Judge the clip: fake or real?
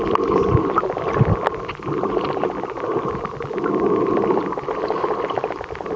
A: real